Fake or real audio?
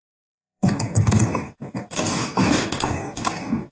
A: fake